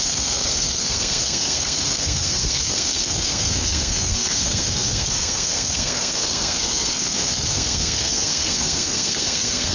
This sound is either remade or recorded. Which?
remade